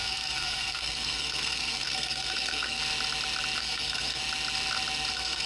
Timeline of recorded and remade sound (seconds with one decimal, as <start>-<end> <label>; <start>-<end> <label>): 0.0-2.8 remade; 2.8-3.6 recorded; 3.6-4.2 remade; 4.2-5.1 recorded; 5.1-5.5 remade